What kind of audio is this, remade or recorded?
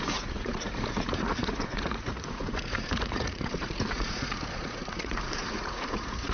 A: remade